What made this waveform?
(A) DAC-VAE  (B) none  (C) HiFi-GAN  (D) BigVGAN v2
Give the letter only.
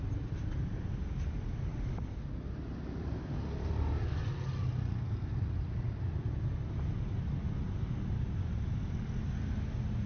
B